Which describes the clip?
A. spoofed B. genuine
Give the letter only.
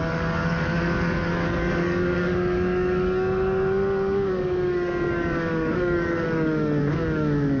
A